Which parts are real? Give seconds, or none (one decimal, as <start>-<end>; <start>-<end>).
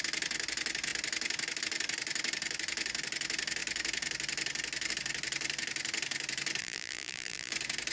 0.0-6.6; 7.5-7.9